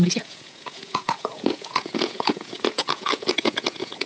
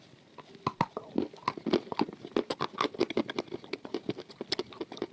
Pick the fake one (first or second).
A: first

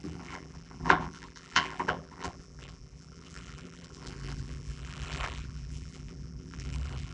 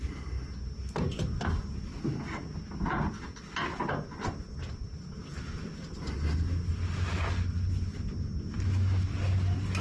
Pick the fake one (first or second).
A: first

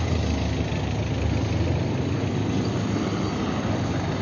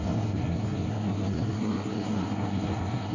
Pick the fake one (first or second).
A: second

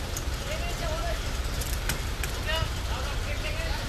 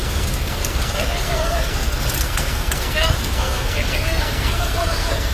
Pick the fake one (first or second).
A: second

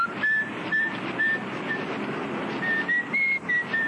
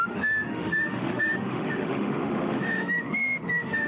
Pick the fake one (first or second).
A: second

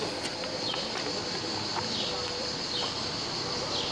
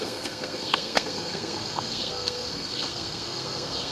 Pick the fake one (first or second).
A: second